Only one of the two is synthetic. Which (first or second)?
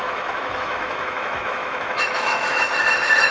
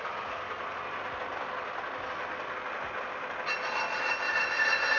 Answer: first